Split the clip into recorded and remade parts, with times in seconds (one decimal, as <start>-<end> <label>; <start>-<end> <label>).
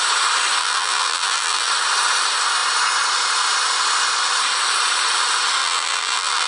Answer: 0.0-0.6 recorded; 0.6-1.7 remade; 1.7-5.6 recorded; 5.6-6.5 remade